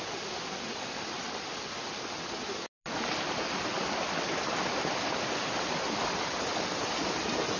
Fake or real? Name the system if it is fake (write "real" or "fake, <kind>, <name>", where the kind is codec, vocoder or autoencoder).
real